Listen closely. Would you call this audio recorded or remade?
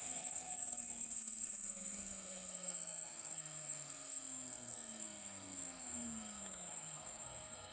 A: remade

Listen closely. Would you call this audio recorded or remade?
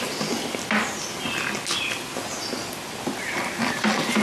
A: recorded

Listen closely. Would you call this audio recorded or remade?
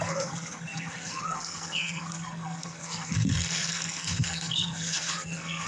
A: remade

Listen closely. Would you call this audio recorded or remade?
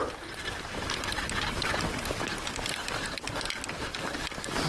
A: recorded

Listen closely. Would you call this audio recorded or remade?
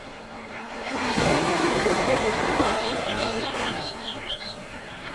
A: remade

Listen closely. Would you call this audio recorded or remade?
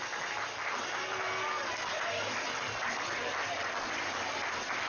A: recorded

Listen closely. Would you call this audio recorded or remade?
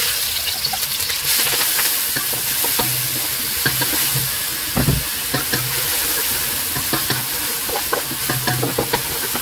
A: recorded